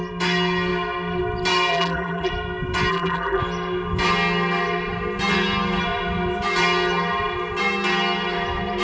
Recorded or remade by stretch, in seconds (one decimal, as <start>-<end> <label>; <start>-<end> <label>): 0.0-1.7 recorded; 1.7-2.3 remade; 2.3-2.9 recorded; 2.9-3.4 remade; 3.4-8.8 recorded